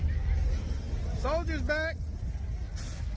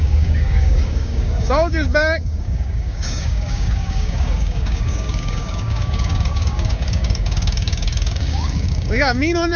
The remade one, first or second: second